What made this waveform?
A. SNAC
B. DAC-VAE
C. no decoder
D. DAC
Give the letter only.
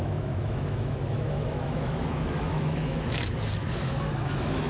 B